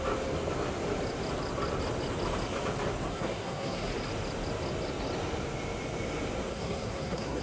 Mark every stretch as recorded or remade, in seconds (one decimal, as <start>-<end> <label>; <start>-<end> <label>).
0.0-3.1 recorded; 3.1-3.9 remade; 3.9-6.5 recorded; 6.5-7.4 remade